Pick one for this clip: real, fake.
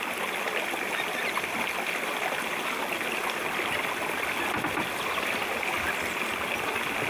real